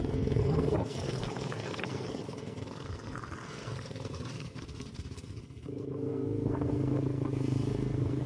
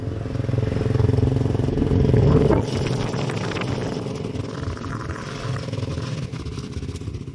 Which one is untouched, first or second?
second